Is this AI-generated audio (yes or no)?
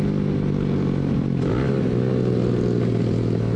no